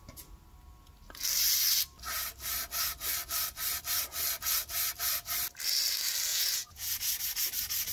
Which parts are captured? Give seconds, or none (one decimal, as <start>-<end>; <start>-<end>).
0.0-6.3; 7.2-7.9